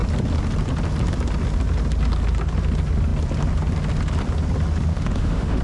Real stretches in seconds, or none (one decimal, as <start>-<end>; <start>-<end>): 0.0-4.9